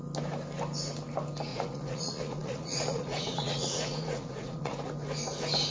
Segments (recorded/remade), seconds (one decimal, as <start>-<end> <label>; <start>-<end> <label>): 0.0-1.5 recorded; 1.5-4.9 remade; 4.9-5.7 recorded